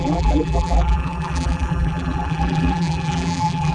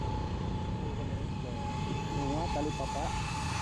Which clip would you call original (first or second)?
second